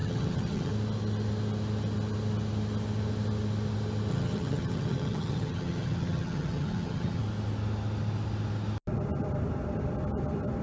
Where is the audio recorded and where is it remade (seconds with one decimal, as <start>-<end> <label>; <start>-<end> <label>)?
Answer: 0.0-0.7 remade; 0.7-4.1 recorded; 4.1-7.2 remade; 7.2-10.6 recorded